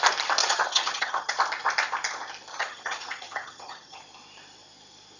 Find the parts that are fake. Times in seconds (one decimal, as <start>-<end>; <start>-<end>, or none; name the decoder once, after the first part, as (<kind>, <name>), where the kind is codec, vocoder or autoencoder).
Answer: 0.4-1.3 (vocoder, HiFi-GAN); 2.5-4.0